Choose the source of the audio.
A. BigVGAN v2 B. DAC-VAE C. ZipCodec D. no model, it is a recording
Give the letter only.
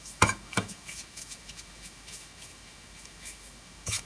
B